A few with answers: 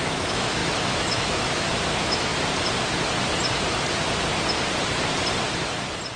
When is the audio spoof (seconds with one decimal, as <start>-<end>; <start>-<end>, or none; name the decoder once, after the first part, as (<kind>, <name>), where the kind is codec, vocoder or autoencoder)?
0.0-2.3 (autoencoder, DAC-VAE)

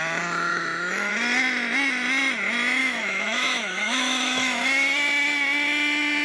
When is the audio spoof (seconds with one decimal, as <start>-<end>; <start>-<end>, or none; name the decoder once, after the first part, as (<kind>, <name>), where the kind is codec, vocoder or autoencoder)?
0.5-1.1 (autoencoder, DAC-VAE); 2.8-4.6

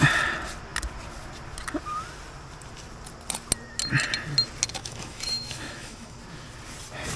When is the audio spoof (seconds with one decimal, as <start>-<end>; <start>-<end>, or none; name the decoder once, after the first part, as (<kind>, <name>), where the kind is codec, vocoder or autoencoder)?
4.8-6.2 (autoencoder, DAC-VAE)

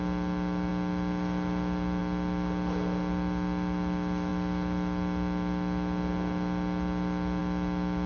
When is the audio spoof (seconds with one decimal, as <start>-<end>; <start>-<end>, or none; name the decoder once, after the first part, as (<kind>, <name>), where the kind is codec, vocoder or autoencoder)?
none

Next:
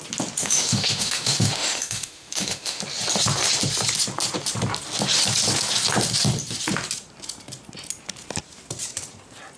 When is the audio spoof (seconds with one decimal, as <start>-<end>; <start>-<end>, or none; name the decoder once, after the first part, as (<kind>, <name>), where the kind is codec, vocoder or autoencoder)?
0.4-2.8 (autoencoder, DAC-VAE)

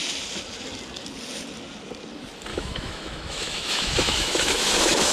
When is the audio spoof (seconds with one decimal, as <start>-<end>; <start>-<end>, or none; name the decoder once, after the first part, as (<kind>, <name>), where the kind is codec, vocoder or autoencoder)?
2.5-5.1 (autoencoder, DAC-VAE)